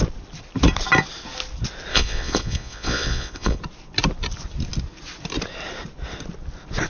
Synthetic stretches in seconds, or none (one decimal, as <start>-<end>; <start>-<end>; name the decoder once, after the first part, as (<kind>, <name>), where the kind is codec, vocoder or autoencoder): 1.9-3.6 (vocoder, Vocos)